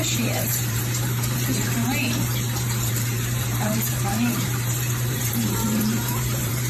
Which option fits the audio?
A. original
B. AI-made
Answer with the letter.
B